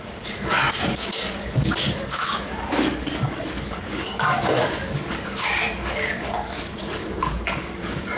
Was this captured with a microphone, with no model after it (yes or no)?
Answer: no